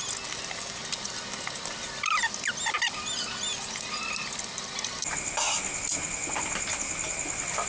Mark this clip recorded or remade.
recorded